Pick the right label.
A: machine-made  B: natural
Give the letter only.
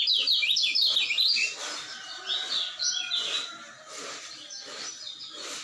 B